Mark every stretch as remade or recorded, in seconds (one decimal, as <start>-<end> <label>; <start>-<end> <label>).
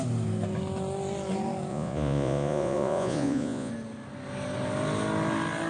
0.0-1.7 recorded; 1.7-3.7 remade; 3.7-5.7 recorded